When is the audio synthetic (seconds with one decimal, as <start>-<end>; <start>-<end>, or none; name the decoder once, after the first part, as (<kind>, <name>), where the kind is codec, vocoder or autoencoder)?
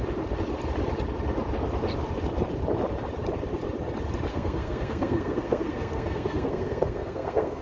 4.3-7.6 (codec, SNAC)